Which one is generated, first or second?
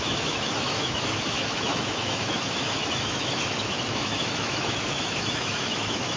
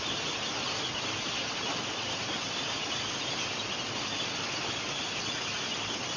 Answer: first